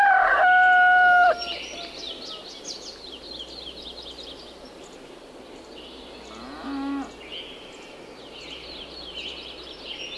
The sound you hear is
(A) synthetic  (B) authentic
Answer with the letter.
B